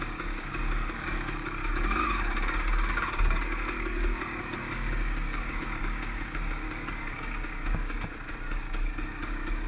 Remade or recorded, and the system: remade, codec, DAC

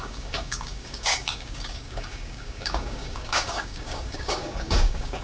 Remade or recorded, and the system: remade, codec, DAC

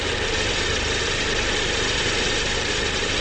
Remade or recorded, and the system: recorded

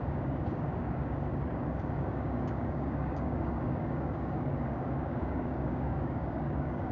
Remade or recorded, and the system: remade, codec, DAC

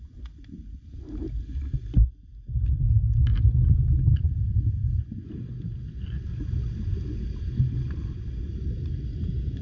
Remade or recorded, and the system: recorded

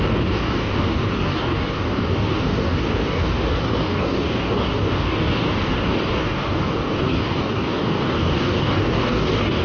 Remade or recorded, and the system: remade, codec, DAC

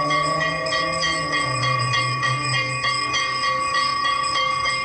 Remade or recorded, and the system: remade, codec, DAC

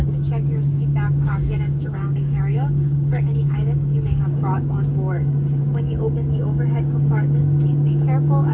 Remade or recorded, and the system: remade, codec, DAC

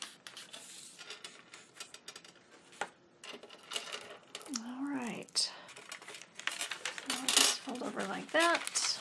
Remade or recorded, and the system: recorded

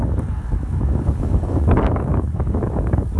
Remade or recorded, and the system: remade, codec, DAC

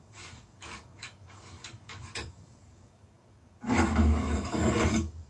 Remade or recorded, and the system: remade, codec, DAC